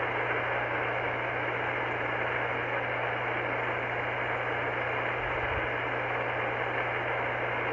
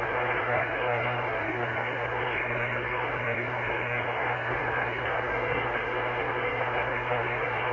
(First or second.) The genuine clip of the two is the first